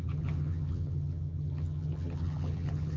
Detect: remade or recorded remade